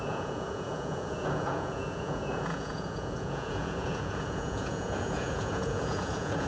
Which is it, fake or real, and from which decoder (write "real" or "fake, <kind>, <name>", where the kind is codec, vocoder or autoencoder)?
fake, vocoder, Vocos